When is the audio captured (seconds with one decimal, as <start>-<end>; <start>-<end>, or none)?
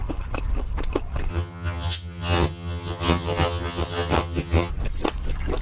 0.0-1.3; 4.7-5.6